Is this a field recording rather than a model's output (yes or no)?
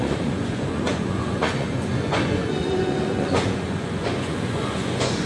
no